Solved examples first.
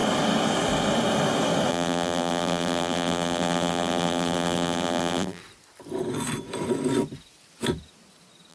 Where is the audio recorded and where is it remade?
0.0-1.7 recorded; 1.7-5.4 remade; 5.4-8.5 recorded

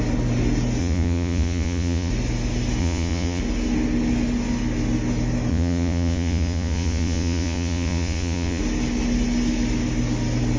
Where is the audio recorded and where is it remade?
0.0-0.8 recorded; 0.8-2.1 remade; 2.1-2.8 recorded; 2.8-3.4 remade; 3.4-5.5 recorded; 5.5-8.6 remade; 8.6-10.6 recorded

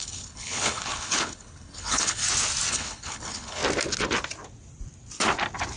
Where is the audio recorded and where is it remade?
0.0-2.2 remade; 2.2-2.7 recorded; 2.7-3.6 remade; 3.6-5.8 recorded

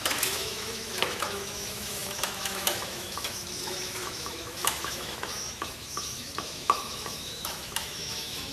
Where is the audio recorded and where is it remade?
0.0-8.5 remade

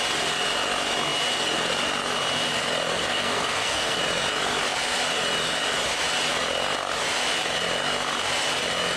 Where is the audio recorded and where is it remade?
0.0-2.9 recorded; 2.9-4.0 remade; 4.0-9.0 recorded

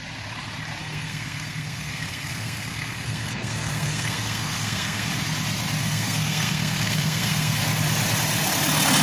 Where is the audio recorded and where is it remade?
0.0-0.8 recorded; 0.8-5.1 remade; 5.1-5.8 recorded; 5.8-7.6 remade; 7.6-9.0 recorded